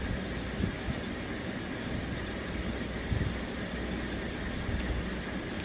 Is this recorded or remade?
recorded